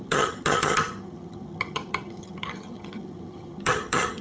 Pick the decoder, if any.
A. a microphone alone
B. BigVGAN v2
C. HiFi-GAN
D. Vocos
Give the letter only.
C